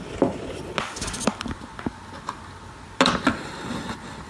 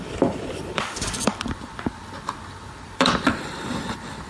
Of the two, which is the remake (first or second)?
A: second